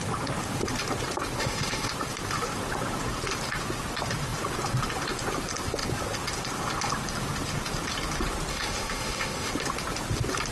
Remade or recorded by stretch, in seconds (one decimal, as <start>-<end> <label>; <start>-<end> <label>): 0.0-1.4 recorded; 1.4-1.9 remade; 1.9-8.5 recorded; 8.5-9.5 remade; 9.5-10.5 recorded